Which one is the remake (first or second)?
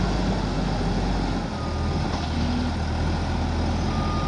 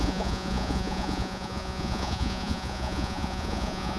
second